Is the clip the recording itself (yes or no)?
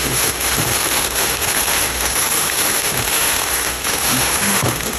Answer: no